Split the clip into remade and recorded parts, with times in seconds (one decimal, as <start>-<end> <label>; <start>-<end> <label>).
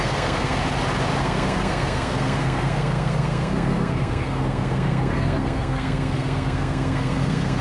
0.0-0.6 remade; 0.6-1.2 recorded; 1.2-7.6 remade